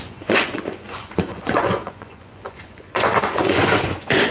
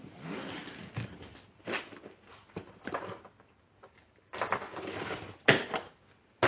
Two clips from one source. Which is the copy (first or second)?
first